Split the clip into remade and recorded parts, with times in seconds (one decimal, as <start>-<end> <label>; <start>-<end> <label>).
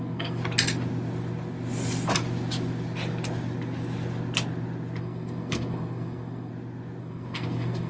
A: 0.0-0.4 remade; 0.4-5.0 recorded; 5.0-6.5 remade; 6.5-7.0 recorded; 7.0-7.9 remade